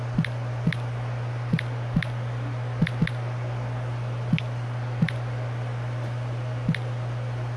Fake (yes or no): no